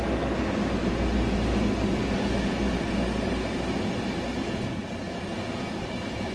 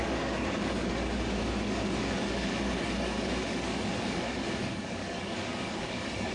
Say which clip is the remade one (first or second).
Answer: second